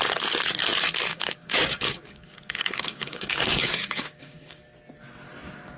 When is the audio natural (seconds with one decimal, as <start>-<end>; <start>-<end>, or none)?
0.0-1.1; 4.6-5.8